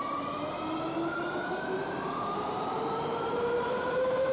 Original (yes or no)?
no